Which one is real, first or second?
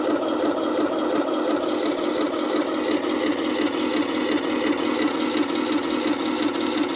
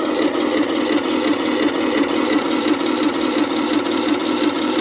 first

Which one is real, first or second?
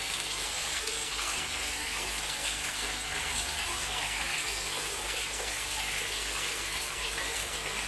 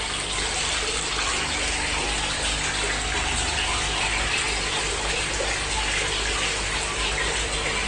second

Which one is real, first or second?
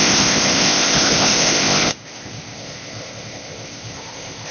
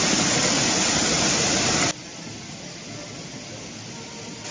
second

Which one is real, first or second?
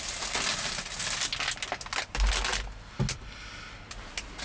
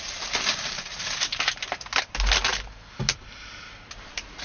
first